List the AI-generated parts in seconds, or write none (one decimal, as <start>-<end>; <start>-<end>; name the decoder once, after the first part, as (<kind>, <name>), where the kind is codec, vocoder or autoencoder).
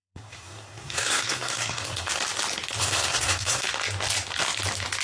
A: 0.0-2.1 (codec, SNAC); 2.8-3.7